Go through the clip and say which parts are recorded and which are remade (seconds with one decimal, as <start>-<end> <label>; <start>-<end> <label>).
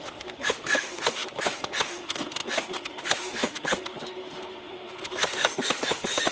0.0-6.3 remade